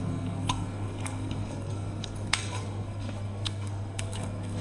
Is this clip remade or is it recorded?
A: remade